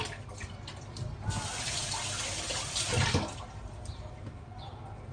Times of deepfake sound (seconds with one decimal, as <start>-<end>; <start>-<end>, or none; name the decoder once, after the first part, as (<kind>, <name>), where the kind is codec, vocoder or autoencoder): none